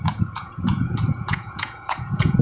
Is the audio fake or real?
fake